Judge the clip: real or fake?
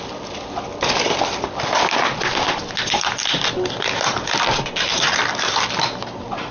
real